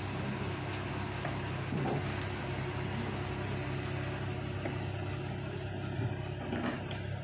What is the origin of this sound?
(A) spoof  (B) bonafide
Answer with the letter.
B